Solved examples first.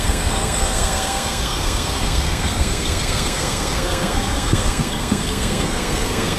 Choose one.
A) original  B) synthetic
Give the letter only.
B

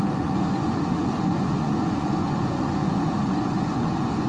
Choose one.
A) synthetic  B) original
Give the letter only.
A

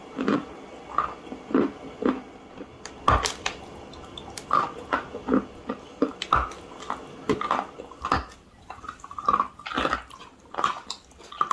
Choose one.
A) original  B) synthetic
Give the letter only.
A